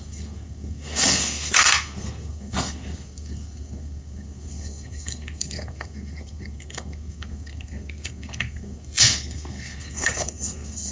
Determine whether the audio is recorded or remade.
remade